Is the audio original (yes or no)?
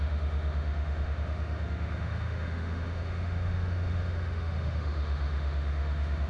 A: no